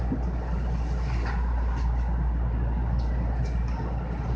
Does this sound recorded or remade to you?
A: recorded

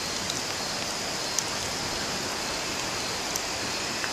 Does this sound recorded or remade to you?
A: recorded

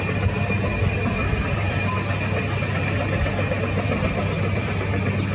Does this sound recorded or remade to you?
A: recorded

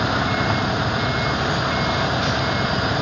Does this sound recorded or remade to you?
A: recorded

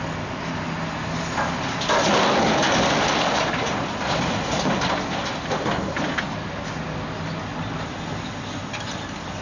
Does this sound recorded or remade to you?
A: recorded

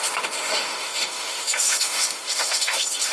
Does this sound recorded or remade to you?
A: remade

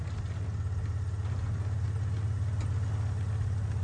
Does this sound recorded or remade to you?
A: recorded